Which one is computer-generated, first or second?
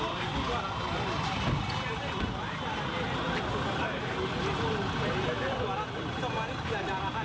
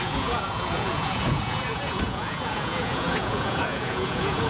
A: second